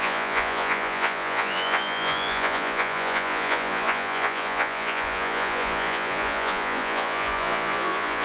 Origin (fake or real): fake